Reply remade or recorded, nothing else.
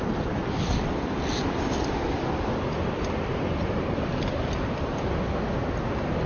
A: recorded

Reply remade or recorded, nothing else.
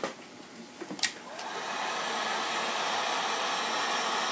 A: recorded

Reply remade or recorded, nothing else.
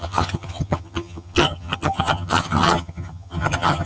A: remade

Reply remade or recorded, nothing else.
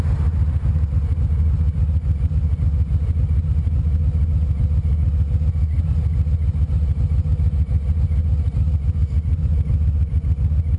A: recorded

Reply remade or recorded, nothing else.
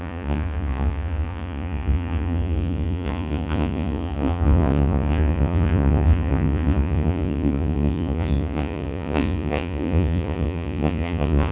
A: remade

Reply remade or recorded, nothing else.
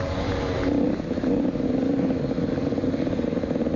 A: remade